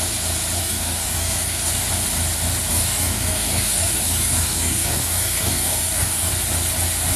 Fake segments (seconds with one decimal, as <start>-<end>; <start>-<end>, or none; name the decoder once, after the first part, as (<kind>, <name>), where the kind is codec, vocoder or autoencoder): 0.6-1.7 (codec, DAC); 2.7-6.3